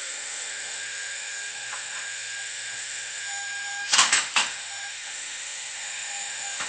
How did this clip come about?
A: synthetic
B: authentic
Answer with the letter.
A